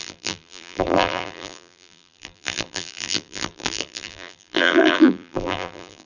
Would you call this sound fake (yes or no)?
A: yes